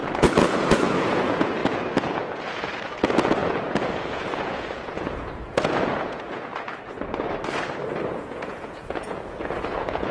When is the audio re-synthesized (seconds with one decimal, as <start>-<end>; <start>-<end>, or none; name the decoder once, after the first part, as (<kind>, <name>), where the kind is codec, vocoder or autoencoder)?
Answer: 0.0-6.5 (vocoder, Vocos); 8.1-10.1